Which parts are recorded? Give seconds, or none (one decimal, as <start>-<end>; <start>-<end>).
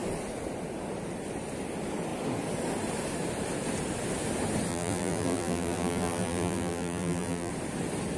0.0-4.7; 7.5-8.2